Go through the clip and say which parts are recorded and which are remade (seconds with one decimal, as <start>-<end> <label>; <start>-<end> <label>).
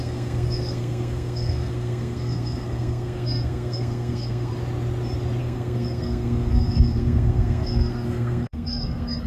0.0-4.5 remade; 4.5-5.4 recorded; 5.4-9.3 remade